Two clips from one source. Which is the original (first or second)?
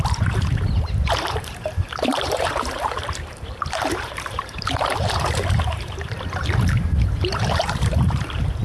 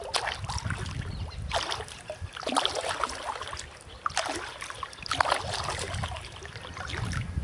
second